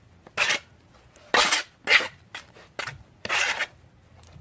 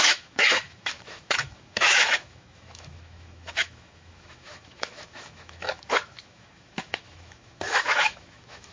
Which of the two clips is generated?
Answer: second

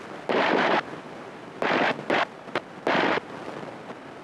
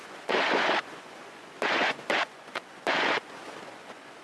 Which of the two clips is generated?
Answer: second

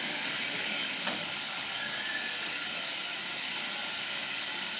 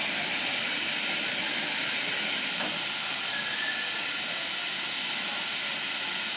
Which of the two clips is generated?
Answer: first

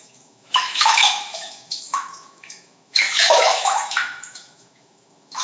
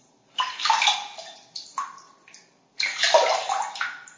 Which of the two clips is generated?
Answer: first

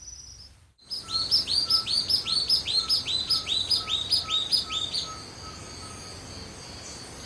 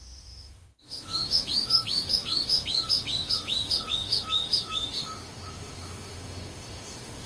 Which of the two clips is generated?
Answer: second